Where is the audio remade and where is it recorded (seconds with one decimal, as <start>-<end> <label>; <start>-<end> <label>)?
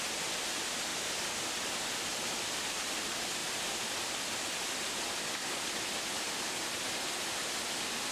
0.0-8.1 recorded